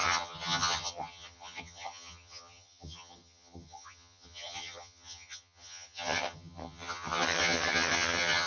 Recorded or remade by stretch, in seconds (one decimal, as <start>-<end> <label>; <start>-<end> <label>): 0.0-8.5 remade